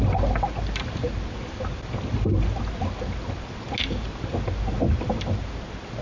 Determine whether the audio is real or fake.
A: real